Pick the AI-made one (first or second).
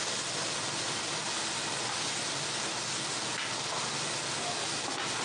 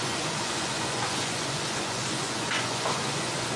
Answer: second